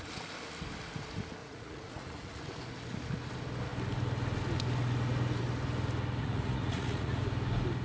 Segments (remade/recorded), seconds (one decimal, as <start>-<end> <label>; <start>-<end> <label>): 0.0-1.4 recorded; 1.4-2.4 remade; 2.4-6.2 recorded; 6.2-7.2 remade; 7.2-7.8 recorded